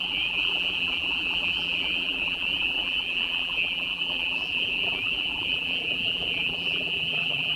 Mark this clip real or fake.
fake